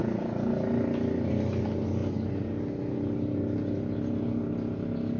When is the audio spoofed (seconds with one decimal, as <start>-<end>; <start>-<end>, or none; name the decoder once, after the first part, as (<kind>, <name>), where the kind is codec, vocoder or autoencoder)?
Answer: none